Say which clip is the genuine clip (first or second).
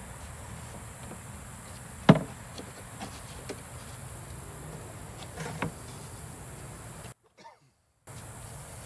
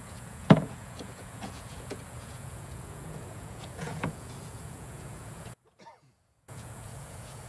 first